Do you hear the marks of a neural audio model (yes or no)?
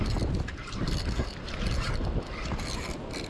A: no